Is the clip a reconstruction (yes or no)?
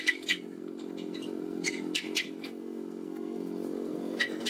yes